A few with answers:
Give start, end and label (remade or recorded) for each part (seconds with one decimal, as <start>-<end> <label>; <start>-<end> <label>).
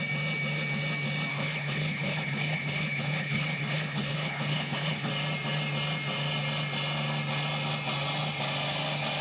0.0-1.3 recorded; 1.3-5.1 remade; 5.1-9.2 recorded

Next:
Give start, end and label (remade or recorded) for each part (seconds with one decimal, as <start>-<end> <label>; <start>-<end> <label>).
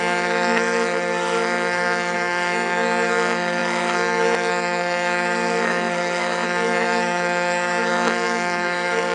0.0-9.1 remade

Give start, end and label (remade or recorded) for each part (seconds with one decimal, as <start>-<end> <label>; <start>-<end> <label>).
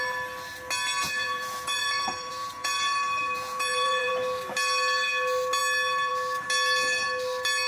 0.0-1.0 recorded; 1.0-4.1 remade; 4.1-7.7 recorded